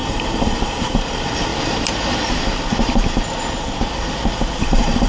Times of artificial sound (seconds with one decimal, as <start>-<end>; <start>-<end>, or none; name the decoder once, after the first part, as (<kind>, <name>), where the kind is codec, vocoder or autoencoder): 0.0-1.5 (vocoder, BigVGAN v2); 4.6-5.1